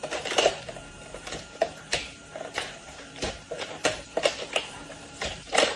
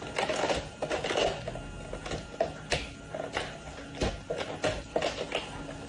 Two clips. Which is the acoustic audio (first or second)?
second